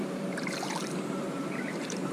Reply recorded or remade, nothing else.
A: remade